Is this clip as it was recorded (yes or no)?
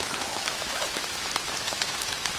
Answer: no